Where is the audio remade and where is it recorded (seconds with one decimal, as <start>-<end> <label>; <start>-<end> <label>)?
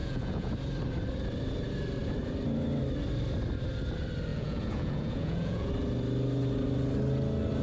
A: 0.0-0.5 remade; 0.5-4.3 recorded; 4.3-5.7 remade; 5.7-7.6 recorded